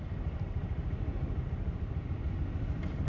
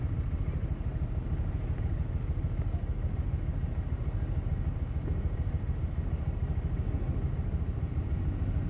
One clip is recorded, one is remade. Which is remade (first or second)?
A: first